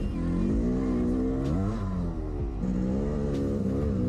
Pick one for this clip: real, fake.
real